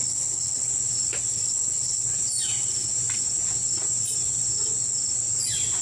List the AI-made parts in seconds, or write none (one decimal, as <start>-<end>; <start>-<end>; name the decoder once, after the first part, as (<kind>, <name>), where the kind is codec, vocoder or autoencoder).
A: 0.0-0.7 (codec, HILCodec); 1.3-2.1